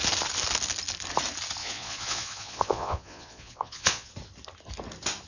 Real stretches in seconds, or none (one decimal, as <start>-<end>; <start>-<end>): 0.0-1.6; 4.1-5.3